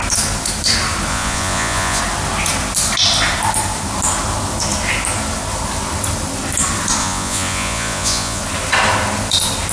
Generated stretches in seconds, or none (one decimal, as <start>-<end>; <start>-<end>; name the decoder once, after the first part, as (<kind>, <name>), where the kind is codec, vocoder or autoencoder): 1.1-2.0 (vocoder, Vocos); 7.0-8.4

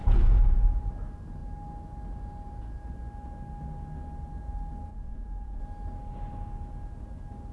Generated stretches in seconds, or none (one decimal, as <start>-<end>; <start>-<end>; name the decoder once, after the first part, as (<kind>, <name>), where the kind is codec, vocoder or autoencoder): 0.0-0.9 (vocoder, Vocos); 4.9-5.6

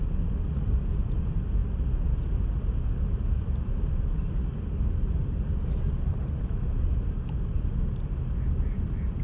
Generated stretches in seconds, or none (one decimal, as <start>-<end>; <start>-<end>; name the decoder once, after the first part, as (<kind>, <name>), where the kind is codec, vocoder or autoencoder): none